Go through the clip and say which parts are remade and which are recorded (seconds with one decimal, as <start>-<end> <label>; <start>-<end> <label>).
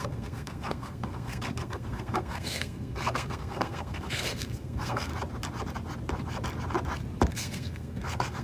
0.0-5.1 remade; 5.1-7.3 recorded; 7.3-8.4 remade